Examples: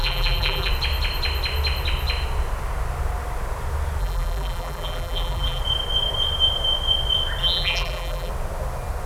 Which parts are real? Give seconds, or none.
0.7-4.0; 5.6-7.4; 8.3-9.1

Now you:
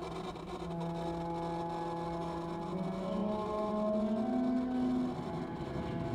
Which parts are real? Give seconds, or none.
0.0-3.2; 3.7-6.1

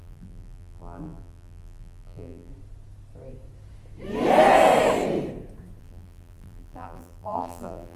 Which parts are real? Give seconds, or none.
2.5-5.8

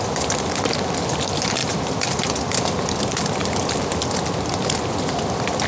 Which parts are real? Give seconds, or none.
0.0-5.7

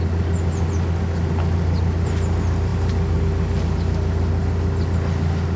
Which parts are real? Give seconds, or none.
0.0-5.6

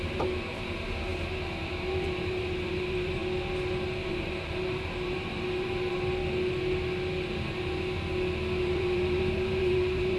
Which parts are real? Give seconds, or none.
3.2-4.1; 6.2-8.6

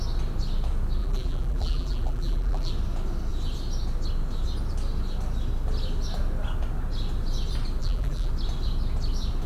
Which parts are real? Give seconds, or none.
0.0-1.0; 2.7-7.8; 8.3-9.5